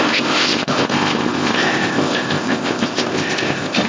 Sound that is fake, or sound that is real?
fake